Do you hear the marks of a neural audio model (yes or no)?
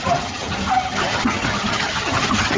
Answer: yes